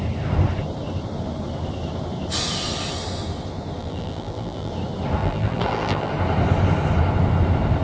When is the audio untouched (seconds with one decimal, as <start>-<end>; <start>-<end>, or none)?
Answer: 0.0-3.8; 4.7-5.2; 6.1-7.8